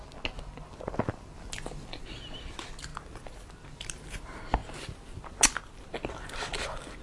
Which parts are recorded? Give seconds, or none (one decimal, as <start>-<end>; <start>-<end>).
0.0-7.0